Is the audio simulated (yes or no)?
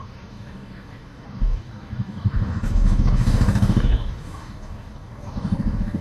yes